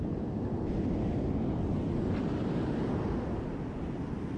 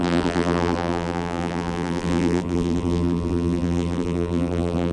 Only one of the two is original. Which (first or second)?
first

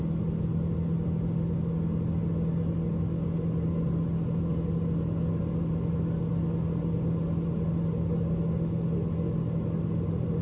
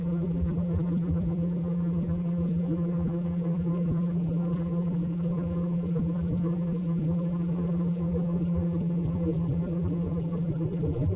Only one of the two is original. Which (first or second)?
first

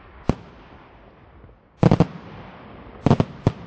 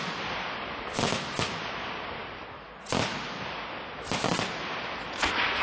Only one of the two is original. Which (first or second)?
second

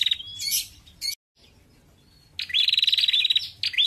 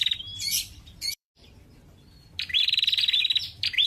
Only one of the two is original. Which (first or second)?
first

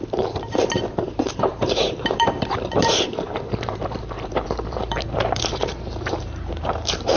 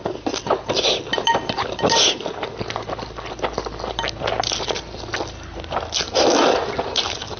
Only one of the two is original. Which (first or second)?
second